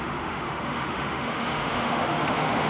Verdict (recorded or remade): remade